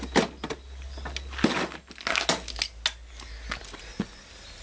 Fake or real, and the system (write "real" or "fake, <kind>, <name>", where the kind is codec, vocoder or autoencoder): real